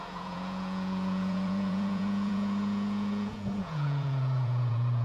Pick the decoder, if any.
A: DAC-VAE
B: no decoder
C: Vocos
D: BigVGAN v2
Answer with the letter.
C